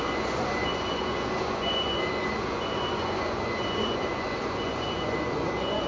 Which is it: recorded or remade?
remade